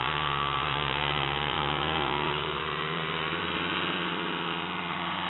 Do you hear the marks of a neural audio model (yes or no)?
yes